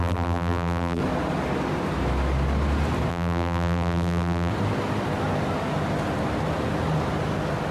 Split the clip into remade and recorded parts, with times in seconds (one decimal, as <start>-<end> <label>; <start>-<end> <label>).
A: 0.0-1.0 remade; 1.0-3.1 recorded; 3.1-4.5 remade; 4.5-7.7 recorded